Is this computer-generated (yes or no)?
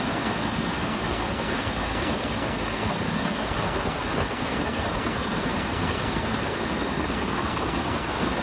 yes